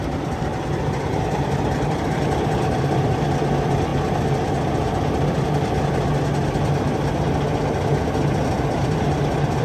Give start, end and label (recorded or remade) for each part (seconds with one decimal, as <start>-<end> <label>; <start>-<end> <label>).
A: 0.0-0.5 remade; 0.5-1.2 recorded; 1.2-3.9 remade; 3.9-8.5 recorded; 8.5-9.6 remade